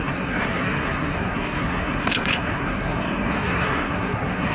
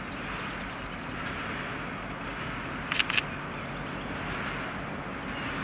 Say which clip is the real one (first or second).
second